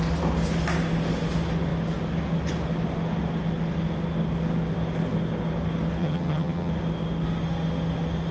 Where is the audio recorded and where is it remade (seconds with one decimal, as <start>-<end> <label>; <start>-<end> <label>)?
0.0-6.0 recorded; 6.0-6.7 remade; 6.7-8.3 recorded